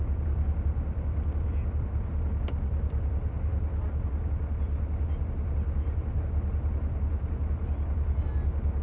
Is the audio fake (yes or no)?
no